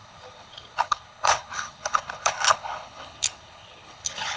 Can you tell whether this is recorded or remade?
remade